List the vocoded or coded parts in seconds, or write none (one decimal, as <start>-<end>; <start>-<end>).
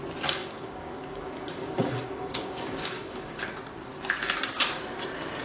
0.4-3.4